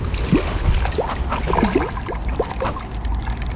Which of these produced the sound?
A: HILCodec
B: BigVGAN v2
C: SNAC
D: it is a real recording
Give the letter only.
D